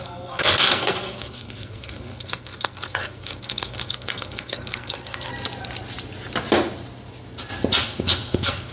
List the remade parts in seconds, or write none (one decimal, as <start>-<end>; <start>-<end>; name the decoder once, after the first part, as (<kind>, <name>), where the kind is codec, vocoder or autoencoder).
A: 0.0-5.3 (codec, SNAC); 7.8-8.7

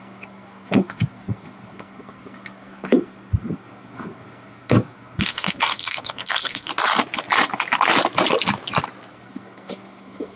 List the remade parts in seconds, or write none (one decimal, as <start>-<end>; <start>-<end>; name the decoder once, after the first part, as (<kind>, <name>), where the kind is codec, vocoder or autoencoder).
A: 0.0-6.7 (codec, SNAC); 9.1-10.3

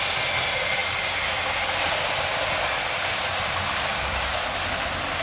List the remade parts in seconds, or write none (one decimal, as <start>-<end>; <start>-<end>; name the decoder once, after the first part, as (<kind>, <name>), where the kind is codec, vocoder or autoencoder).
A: none